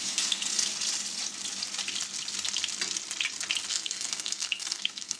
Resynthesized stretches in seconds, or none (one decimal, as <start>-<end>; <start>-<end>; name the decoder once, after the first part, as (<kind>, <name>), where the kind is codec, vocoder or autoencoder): 0.0-0.7 (codec, SNAC); 3.7-5.2